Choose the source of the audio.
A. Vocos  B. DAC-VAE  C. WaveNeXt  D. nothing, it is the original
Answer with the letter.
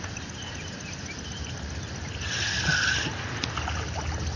D